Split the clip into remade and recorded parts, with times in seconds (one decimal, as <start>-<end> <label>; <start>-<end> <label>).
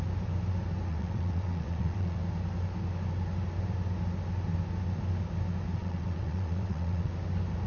0.0-0.9 recorded; 0.9-2.2 remade; 2.2-5.8 recorded; 5.8-7.1 remade; 7.1-7.7 recorded